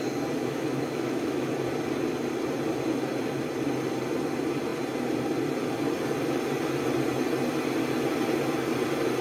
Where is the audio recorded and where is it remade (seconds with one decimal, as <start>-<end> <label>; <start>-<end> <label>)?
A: 0.0-0.4 recorded; 0.4-1.5 remade; 1.5-9.2 recorded